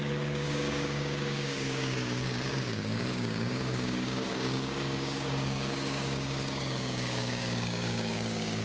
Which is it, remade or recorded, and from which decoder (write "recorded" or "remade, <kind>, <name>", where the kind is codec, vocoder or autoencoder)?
remade, codec, DAC